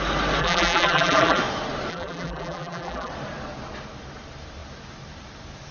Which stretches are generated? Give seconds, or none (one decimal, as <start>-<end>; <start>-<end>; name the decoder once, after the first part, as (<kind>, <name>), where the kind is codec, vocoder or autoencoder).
0.4-1.4 (vocoder, BigVGAN v2); 1.9-3.1